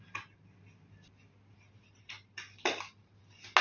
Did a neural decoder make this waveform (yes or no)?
no